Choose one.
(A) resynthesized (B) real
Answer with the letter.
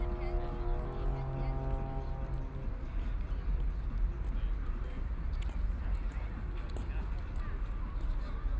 B